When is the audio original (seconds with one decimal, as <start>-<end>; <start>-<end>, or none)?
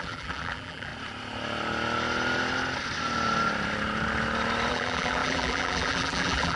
0.9-4.7